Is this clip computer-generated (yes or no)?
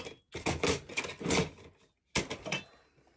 no